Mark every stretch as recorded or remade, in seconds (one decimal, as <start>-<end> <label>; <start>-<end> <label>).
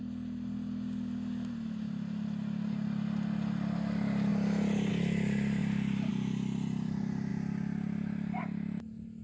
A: 0.0-5.6 recorded; 5.6-6.1 remade; 6.1-9.2 recorded